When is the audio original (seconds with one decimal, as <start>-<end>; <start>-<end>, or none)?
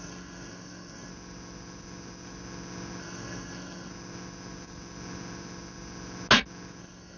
1.1-3.0; 3.9-6.8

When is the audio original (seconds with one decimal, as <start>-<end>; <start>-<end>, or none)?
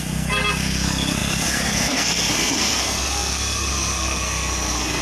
none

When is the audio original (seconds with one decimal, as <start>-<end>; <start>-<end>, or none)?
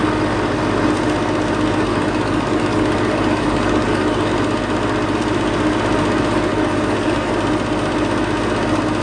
0.0-1.9; 4.3-6.5; 7.3-9.0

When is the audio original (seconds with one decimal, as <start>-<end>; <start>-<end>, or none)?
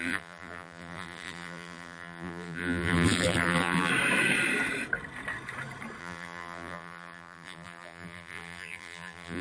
3.9-6.0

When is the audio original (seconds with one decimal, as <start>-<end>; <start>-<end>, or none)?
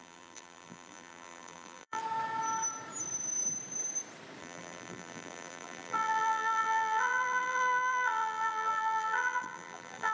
2.0-4.4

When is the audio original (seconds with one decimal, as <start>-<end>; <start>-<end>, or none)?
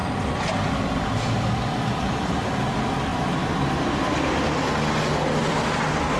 0.0-6.2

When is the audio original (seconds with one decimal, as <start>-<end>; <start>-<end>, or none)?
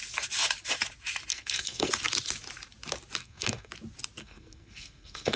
0.0-1.3; 1.9-3.2; 3.7-4.2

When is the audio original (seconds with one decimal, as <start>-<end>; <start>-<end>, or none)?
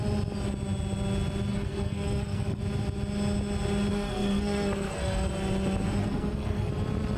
0.0-1.5; 2.6-3.9; 5.3-6.0; 6.7-7.2